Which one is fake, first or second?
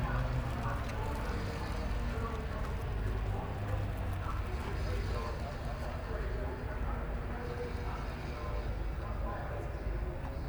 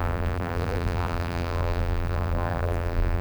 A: second